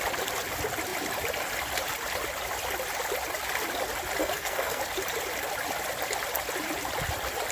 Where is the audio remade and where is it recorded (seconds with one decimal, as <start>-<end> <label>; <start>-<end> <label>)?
0.0-4.2 recorded; 4.2-4.8 remade; 4.8-7.5 recorded